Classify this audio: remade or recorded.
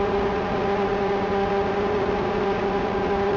remade